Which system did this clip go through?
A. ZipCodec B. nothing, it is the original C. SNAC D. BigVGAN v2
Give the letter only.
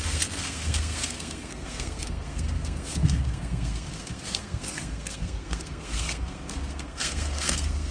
C